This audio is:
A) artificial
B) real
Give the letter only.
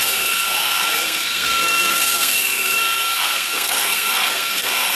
A